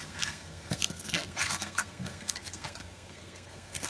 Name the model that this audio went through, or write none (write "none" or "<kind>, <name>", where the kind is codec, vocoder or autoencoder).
codec, SNAC